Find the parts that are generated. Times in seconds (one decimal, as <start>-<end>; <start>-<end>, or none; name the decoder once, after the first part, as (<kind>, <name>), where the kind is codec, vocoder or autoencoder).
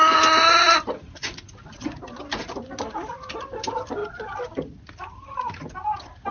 1.2-2.0 (vocoder, Vocos)